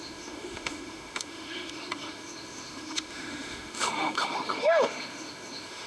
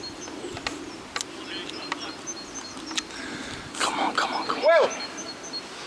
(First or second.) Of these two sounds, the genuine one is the second